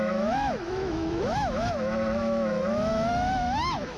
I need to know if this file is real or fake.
fake